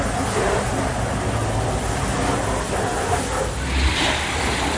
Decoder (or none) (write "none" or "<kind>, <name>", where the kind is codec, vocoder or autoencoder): none